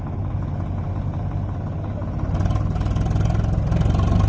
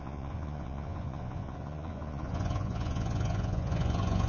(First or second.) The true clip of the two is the first